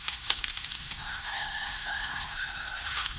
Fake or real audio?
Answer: fake